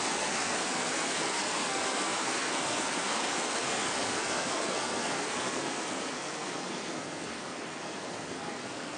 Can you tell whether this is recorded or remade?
remade